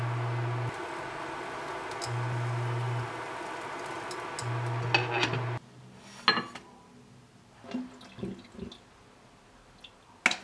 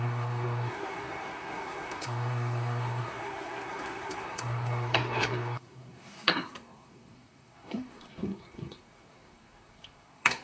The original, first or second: first